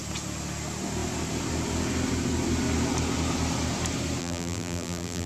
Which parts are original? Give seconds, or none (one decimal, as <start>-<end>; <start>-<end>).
0.0-4.2